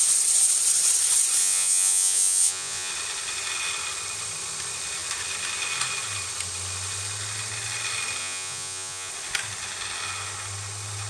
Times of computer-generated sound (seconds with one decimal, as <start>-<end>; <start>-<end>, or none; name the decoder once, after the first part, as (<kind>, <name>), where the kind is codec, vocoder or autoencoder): 1.4-2.9 (vocoder, Vocos); 8.2-9.1